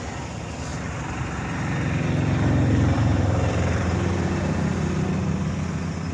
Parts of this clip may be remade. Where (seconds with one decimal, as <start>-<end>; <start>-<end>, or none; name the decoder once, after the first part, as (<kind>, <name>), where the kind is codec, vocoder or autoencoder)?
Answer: 0.7-4.4 (vocoder, BigVGAN v2)